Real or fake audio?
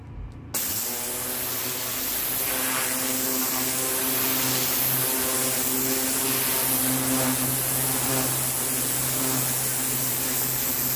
real